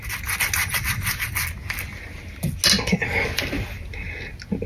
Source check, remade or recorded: recorded